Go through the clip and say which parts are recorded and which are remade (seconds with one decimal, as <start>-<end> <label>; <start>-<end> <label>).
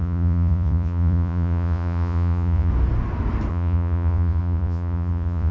0.0-2.7 remade; 2.7-3.5 recorded; 3.5-5.5 remade